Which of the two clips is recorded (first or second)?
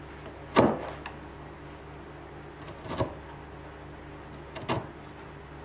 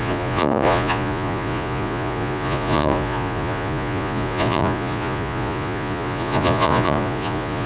first